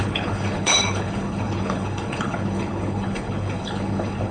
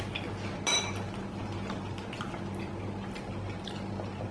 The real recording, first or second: second